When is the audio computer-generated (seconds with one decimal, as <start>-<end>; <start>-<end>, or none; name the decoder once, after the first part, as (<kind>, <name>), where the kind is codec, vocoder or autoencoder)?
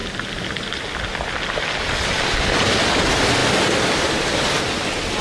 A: none